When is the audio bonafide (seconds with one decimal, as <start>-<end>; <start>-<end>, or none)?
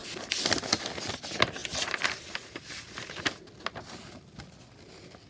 0.0-5.3